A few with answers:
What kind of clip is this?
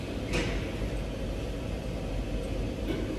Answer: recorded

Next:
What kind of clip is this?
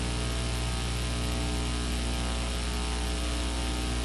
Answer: recorded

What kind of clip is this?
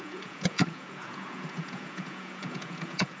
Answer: remade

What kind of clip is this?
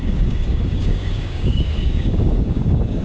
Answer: remade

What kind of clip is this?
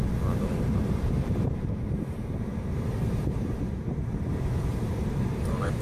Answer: remade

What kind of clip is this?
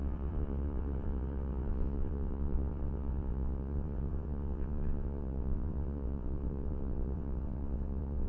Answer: remade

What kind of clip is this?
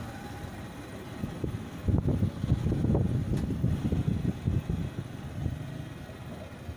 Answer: recorded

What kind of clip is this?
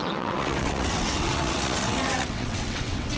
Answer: remade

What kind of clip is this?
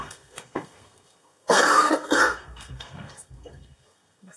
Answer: remade